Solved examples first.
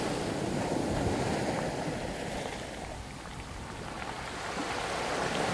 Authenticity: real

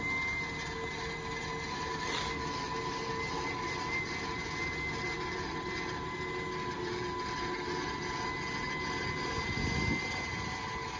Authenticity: real